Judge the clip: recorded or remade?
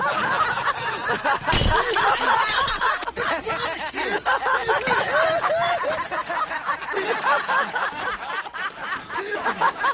recorded